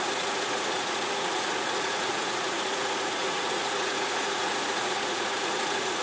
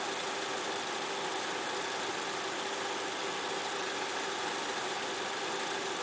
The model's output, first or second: first